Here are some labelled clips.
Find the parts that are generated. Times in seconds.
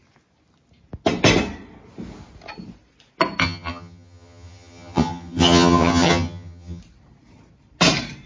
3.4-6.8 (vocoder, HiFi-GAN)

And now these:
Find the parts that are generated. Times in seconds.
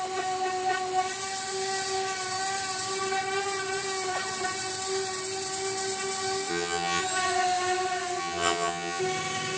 6.5-7.0 (vocoder, HiFi-GAN); 8.2-9.0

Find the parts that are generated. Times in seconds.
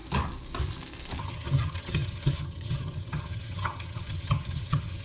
1.2-5.0 (vocoder, HiFi-GAN)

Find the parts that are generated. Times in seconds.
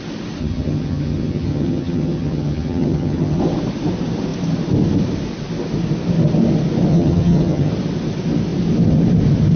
0.4-3.4 (vocoder, HiFi-GAN); 6.9-7.7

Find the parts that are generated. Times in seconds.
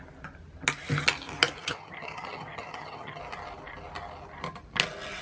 1.6-3.2 (vocoder, HiFi-GAN)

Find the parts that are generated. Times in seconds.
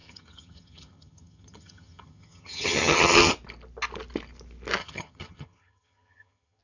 0.0-3.3 (vocoder, HiFi-GAN); 4.8-6.6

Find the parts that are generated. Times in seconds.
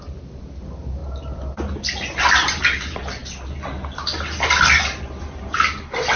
none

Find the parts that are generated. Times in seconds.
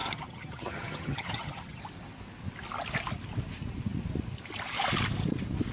0.0-1.8 (vocoder, HiFi-GAN)